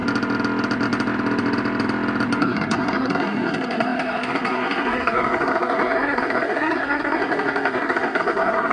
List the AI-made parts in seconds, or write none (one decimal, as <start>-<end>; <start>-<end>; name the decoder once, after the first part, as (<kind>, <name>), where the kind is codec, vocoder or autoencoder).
2.4-8.7 (codec, SNAC)